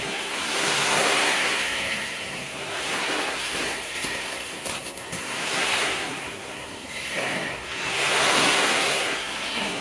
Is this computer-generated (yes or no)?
yes